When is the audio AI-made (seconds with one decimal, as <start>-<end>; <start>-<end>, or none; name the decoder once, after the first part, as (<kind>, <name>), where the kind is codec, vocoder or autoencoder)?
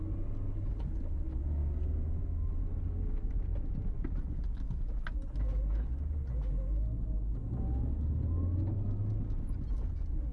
none